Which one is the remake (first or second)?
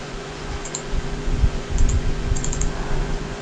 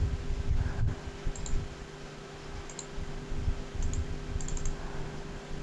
first